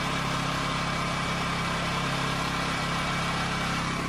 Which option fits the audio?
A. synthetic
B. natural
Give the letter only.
A